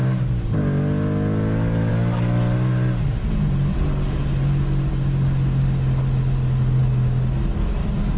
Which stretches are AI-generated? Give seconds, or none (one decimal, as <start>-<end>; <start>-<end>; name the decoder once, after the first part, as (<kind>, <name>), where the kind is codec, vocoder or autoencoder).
none